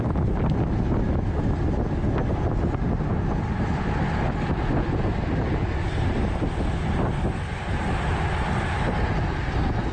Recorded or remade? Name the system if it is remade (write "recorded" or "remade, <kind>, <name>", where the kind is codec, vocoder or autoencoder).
recorded